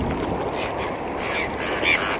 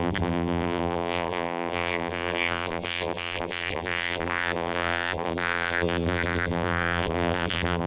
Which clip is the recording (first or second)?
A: first